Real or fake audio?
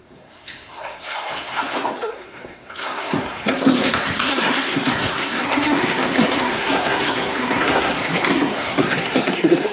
fake